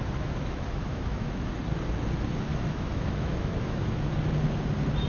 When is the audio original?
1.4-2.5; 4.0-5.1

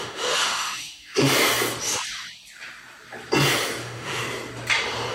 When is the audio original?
1.3-3.8; 4.2-5.1

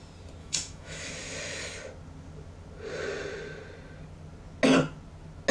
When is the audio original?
0.0-0.4; 1.1-5.5